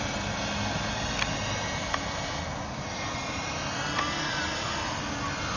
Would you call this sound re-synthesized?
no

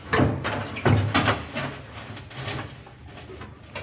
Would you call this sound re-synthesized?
no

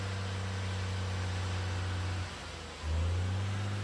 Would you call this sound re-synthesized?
no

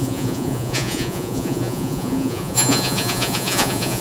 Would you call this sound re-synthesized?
yes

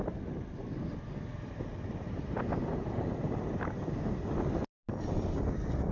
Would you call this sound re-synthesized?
no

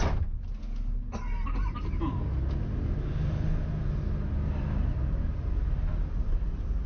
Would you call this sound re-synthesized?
no